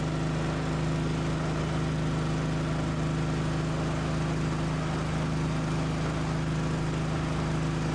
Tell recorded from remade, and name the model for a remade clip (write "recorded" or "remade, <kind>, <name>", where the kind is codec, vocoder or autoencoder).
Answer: recorded